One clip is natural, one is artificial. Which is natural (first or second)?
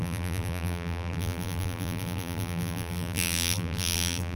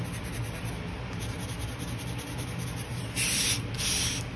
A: second